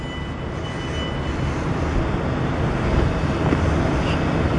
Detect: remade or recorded recorded